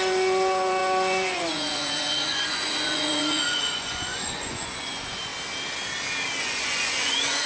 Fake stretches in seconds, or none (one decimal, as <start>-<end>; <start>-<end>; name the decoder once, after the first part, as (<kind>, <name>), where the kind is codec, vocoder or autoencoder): 0.0-5.3 (vocoder, Vocos); 6.4-7.5